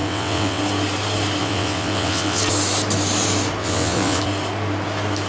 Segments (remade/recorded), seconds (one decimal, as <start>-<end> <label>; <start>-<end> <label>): 0.0-0.6 remade; 0.6-1.4 recorded; 1.4-2.4 remade; 2.4-3.6 recorded; 3.6-4.2 remade; 4.2-5.3 recorded